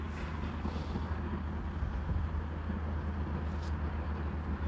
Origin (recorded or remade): recorded